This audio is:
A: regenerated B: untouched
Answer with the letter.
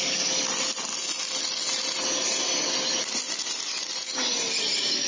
B